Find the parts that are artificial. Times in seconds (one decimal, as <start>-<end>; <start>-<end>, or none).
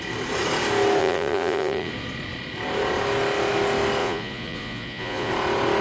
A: 1.0-1.9; 4.0-5.3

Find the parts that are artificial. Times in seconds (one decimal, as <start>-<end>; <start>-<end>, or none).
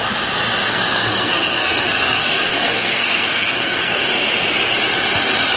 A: 0.7-4.1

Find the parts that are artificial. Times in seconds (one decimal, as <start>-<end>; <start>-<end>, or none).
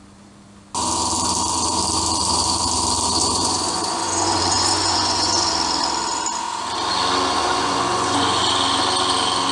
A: 3.2-5.5; 7.4-8.4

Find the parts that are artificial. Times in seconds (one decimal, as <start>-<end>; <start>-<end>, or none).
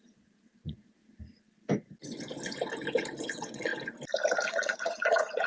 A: 0.0-1.0; 3.2-3.7; 4.5-5.5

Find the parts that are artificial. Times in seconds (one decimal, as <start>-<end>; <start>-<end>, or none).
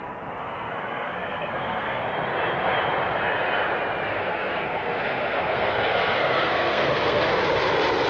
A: 0.4-2.0; 4.1-7.4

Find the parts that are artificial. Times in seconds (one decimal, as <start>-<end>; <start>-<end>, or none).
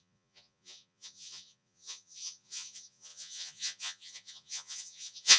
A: 0.0-5.4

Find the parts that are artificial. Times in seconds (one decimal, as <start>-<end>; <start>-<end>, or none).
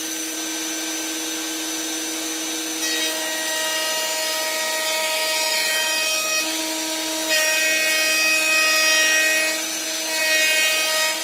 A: 5.0-6.6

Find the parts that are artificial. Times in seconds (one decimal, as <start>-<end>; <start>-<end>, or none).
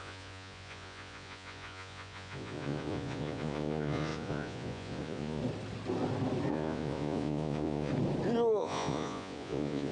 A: 0.0-5.4; 6.5-7.9; 8.6-9.9